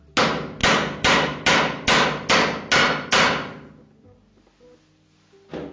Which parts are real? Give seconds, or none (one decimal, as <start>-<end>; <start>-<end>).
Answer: 0.0-5.7